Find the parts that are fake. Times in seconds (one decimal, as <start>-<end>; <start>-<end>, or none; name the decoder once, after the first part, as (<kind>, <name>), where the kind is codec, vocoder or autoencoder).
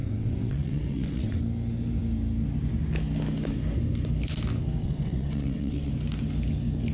0.0-1.4 (vocoder, WaveNeXt); 4.8-5.9